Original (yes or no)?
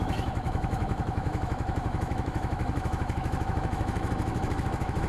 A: no